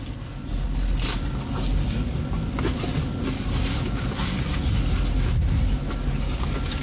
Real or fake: real